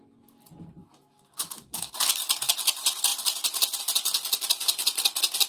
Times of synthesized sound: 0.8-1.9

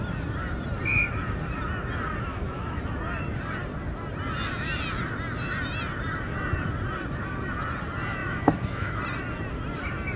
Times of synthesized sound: 2.3-2.8; 8.2-9.0

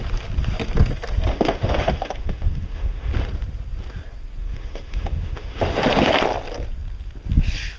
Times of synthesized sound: 1.3-3.1; 4.4-5.8

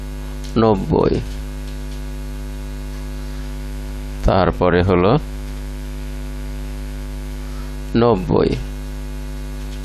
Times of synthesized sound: 0.8-1.4; 3.4-7.6

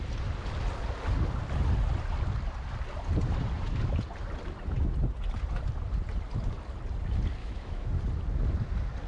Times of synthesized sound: 7.4-7.9

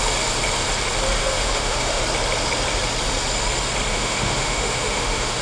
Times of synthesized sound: 1.2-2.0; 3.9-5.4

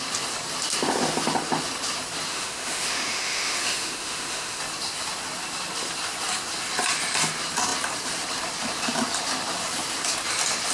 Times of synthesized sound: 2.3-4.6

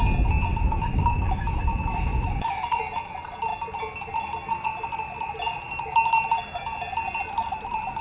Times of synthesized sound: 0.5-2.7